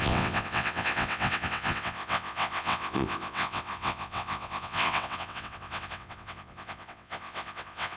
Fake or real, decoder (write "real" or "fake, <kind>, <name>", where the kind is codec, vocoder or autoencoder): fake, vocoder, WaveNeXt